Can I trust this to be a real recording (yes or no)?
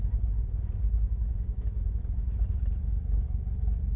yes